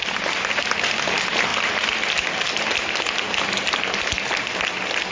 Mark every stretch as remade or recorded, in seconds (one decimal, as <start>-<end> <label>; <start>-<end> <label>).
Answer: 0.0-5.1 recorded